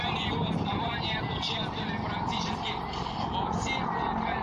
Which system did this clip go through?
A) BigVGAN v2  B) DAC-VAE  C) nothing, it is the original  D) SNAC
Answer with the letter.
C